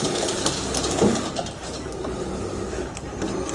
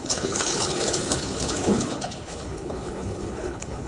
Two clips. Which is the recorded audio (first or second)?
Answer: first